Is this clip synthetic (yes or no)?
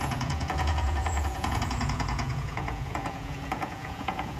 yes